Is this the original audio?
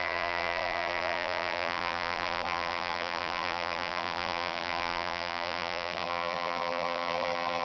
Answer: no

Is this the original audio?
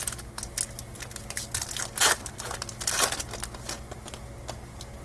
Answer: yes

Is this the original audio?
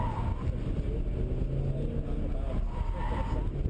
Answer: yes